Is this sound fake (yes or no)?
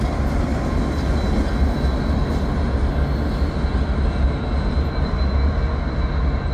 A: no